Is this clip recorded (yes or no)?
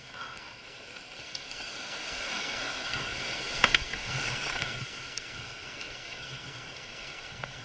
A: no